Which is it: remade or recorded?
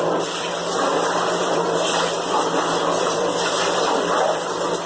remade